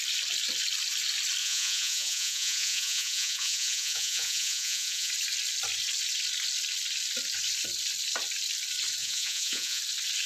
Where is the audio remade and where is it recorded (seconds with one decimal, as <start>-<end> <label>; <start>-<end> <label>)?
0.0-1.4 recorded; 1.4-5.1 remade; 5.1-9.0 recorded; 9.0-9.8 remade; 9.8-10.3 recorded